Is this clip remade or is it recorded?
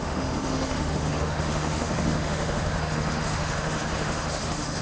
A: remade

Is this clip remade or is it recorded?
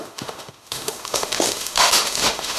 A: remade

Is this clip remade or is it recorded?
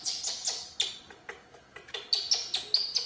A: recorded